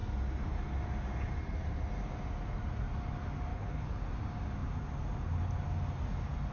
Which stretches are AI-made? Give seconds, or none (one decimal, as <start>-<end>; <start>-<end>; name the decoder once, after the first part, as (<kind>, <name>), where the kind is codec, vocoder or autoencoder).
3.5-4.0 (codec, HILCodec)